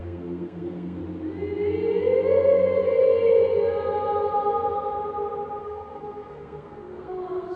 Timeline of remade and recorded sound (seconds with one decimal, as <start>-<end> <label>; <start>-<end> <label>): 0.0-1.0 remade; 1.0-5.6 recorded; 5.6-7.6 remade